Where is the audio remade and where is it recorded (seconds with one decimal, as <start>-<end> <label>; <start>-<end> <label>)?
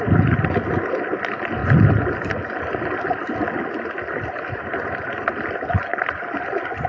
0.0-6.9 recorded